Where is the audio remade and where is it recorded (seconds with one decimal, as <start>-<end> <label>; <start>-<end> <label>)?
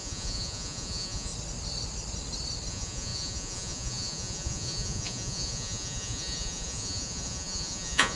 0.0-1.3 remade; 1.3-2.7 recorded; 2.7-8.2 remade